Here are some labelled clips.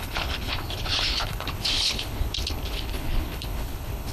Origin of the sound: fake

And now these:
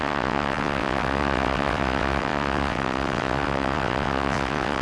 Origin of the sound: fake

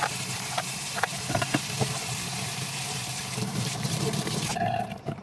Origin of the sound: fake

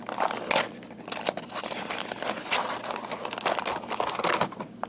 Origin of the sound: real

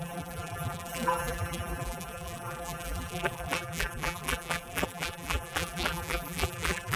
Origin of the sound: fake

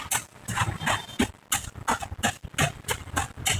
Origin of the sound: real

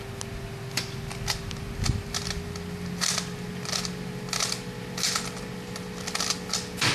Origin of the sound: real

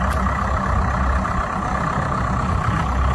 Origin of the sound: real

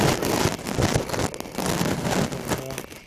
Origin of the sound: real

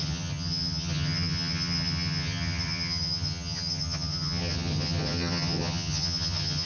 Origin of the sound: fake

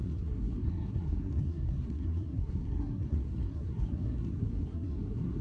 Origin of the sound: fake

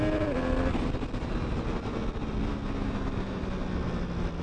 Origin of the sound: real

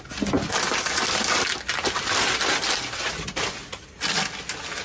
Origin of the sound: real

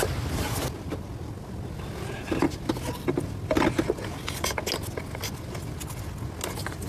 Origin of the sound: real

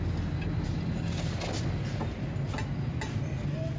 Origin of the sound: real